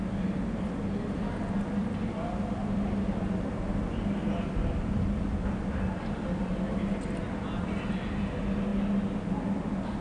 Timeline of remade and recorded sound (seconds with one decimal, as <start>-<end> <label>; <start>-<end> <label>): 0.0-10.0 recorded